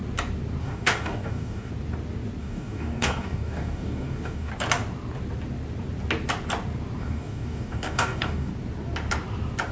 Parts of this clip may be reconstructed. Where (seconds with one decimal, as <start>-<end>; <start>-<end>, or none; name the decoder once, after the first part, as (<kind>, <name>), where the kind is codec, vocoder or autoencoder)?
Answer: 0.6-1.7 (codec, DAC); 2.4-4.5; 7.0-8.5